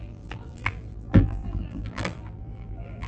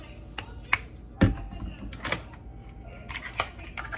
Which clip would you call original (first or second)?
second